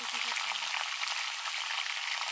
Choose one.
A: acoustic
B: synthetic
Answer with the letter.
A